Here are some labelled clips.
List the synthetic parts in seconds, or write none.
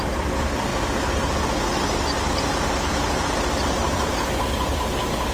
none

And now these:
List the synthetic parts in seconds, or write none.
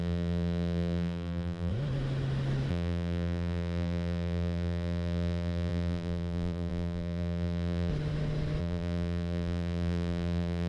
0.0-1.7 (vocoder, BigVGAN v2); 2.7-7.9; 8.6-10.7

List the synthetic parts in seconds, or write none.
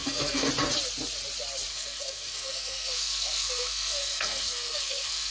0.0-0.5 (codec, SNAC); 1.7-5.3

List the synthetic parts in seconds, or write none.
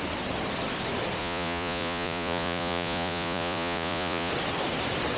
1.2-4.3 (vocoder, Vocos)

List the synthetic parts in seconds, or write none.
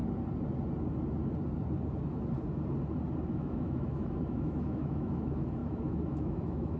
3.3-6.8 (autoencoder, DAC-VAE)